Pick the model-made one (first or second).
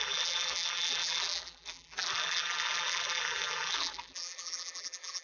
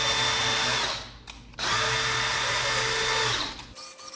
first